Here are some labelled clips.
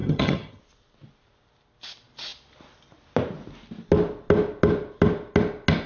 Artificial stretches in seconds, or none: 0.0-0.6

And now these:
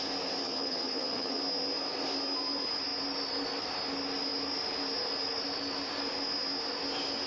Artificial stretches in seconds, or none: 0.4-1.4

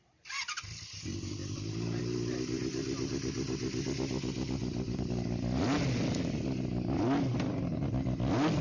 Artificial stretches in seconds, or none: none

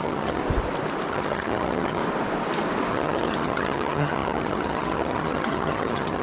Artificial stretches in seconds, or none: 0.0-0.4; 1.1-2.0; 2.9-6.2